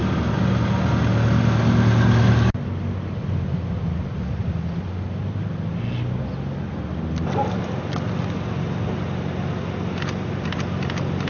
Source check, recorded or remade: recorded